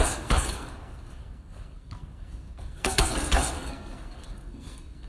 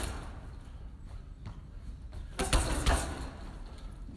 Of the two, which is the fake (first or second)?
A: first